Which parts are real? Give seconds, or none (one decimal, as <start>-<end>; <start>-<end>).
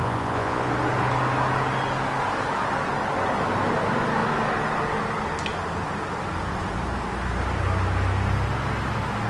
0.7-9.3